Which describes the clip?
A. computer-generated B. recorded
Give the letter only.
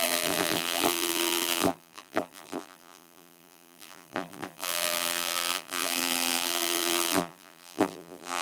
A